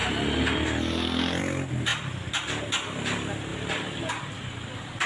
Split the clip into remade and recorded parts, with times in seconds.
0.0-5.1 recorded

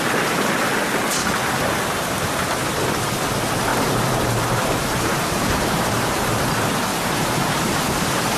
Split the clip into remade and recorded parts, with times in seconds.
0.0-3.7 recorded; 3.7-6.4 remade; 6.4-6.9 recorded; 6.9-8.4 remade

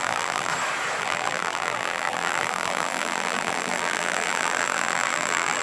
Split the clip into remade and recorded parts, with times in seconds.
0.0-0.5 remade; 0.5-1.0 recorded; 1.0-5.6 remade

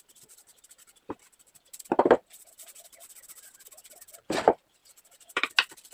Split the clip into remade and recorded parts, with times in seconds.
0.0-4.8 recorded; 4.8-5.5 remade; 5.5-5.9 recorded